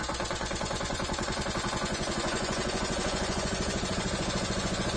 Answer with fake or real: fake